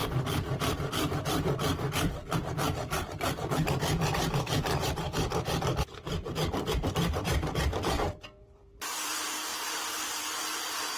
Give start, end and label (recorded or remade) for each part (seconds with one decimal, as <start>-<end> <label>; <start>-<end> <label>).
0.0-11.0 remade